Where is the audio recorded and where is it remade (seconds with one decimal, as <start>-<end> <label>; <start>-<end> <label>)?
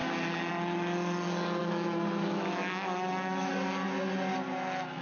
0.0-1.6 recorded; 1.6-3.5 remade; 3.5-5.0 recorded